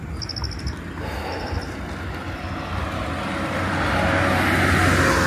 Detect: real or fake real